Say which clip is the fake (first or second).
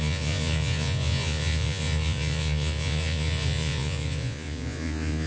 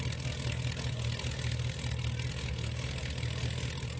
first